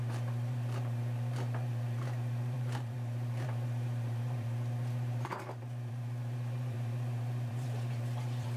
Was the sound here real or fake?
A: fake